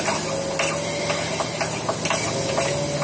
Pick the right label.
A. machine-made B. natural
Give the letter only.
B